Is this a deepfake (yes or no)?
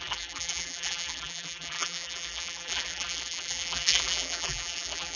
yes